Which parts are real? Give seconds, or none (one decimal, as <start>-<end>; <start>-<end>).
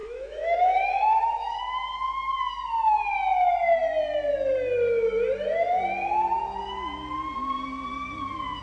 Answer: 1.6-8.6